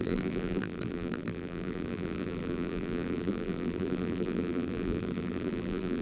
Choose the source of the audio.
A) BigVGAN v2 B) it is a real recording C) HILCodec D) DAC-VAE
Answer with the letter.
A